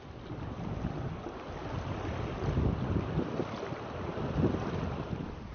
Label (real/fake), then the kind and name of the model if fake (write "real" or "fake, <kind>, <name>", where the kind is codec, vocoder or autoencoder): real